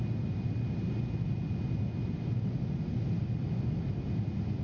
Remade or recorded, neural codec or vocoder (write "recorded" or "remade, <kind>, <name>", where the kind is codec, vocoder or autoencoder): recorded